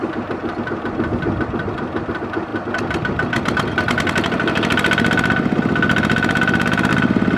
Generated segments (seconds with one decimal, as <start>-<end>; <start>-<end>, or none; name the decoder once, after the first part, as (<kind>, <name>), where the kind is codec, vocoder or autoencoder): none